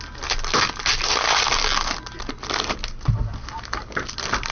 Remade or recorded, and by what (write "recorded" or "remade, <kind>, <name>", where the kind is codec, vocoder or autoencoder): recorded